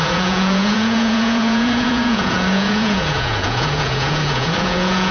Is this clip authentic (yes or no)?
no